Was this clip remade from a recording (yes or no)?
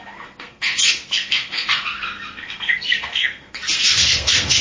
yes